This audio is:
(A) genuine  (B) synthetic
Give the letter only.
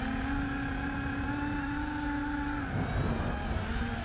A